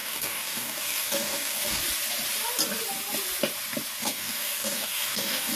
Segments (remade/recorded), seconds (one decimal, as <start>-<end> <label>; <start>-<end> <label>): 0.0-1.8 remade; 1.8-4.0 recorded; 4.0-5.6 remade